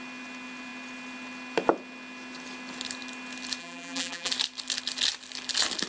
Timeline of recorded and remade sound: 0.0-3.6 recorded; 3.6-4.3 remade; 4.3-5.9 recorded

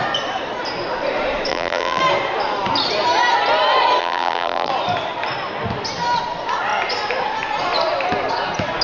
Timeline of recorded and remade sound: 0.0-1.5 recorded; 1.5-2.0 remade; 2.0-4.0 recorded; 4.0-4.7 remade; 4.7-8.8 recorded

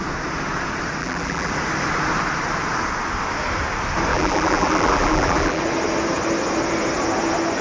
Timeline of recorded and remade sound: 0.0-1.0 recorded; 1.0-1.5 remade; 1.5-4.1 recorded; 4.1-5.6 remade; 5.6-7.6 recorded

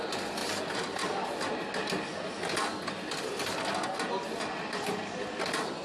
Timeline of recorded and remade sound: 0.0-0.4 recorded; 0.4-1.0 remade; 1.0-5.8 recorded